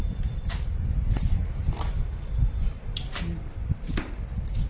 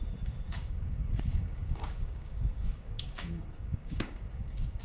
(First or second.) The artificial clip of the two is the second